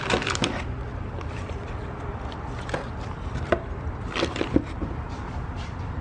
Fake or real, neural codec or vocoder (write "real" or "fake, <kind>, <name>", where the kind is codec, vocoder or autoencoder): fake, vocoder, BigVGAN v2